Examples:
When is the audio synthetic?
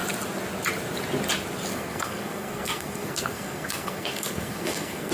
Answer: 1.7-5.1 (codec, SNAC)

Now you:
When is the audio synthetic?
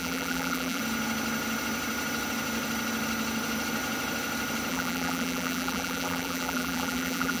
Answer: 0.0-0.8 (vocoder, BigVGAN v2); 4.7-7.4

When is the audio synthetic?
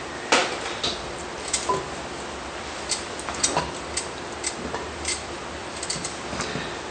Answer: none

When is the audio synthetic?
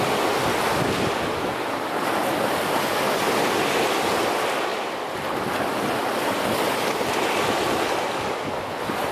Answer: none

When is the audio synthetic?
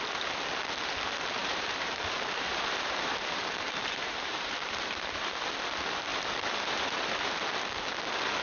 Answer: 1.4-5.3 (vocoder, BigVGAN v2); 6.1-7.3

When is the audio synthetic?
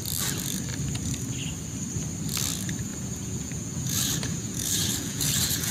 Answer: 2.9-5.7 (vocoder, Vocos)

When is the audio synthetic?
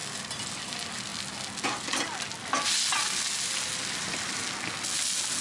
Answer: none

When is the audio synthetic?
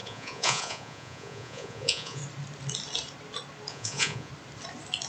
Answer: 0.0-2.2 (vocoder, Vocos); 3.7-4.3